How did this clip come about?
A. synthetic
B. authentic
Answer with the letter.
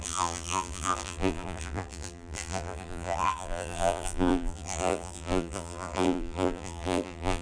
A